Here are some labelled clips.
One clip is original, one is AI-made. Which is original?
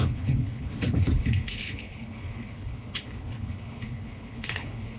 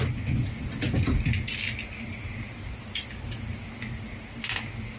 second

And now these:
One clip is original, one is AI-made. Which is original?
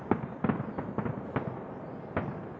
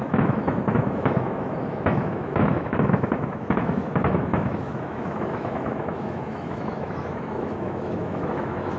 first